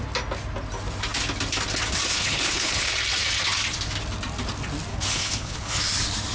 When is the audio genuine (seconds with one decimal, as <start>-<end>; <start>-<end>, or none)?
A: 0.0-2.1; 2.9-4.9; 5.8-6.3